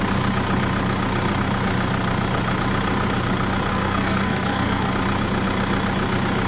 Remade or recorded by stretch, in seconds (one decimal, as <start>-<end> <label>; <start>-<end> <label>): 0.0-3.7 recorded; 3.7-4.9 remade; 4.9-6.5 recorded